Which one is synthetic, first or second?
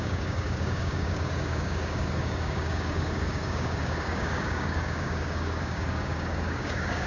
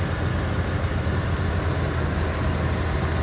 first